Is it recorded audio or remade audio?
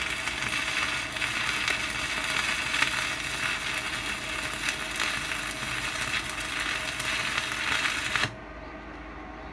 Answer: recorded